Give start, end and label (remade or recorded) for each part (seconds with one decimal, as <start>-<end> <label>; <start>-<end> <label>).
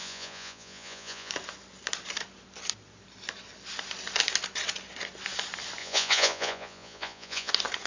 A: 0.0-1.3 remade; 1.3-5.8 recorded; 5.8-7.5 remade; 7.5-7.9 recorded